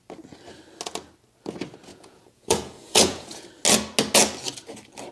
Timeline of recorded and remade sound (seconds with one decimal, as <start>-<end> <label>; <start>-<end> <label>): 0.0-1.9 recorded; 1.9-3.5 remade; 3.5-5.1 recorded